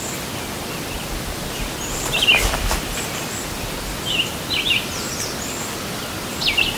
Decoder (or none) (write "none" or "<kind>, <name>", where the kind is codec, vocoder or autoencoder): none